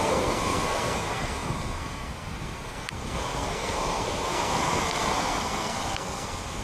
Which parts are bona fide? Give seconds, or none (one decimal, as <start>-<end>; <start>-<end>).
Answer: none